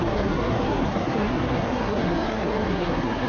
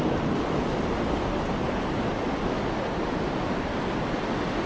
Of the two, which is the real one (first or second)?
second